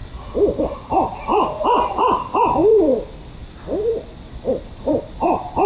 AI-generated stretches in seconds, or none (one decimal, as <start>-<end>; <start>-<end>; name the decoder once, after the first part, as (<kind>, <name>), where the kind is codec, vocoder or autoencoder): 1.3-3.0 (vocoder, BigVGAN v2); 3.4-5.7